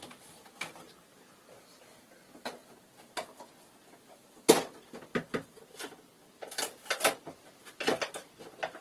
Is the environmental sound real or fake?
real